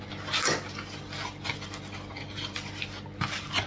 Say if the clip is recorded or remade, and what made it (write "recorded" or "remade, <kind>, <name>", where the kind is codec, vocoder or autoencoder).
recorded